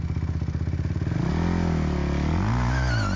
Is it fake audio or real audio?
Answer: real